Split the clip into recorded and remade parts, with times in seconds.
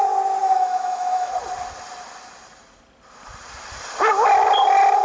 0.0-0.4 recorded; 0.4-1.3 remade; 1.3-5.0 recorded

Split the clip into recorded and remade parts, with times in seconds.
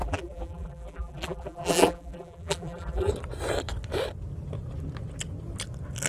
0.0-3.1 remade; 3.1-6.1 recorded